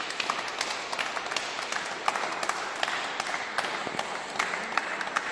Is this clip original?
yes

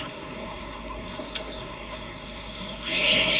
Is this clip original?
no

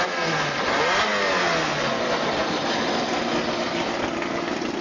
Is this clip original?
yes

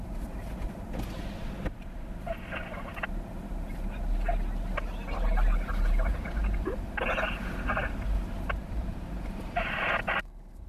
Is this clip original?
yes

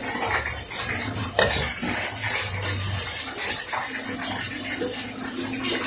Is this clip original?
yes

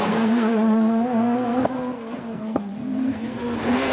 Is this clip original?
no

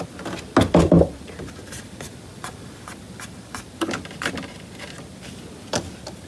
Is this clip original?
yes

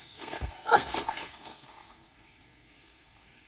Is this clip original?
no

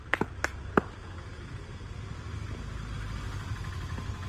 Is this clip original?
yes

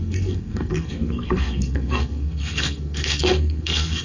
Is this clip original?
no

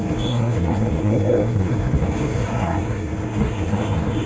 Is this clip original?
no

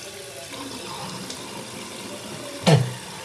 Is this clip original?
yes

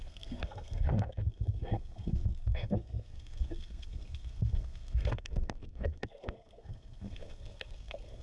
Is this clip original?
no